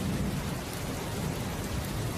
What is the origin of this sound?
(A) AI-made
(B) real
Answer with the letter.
B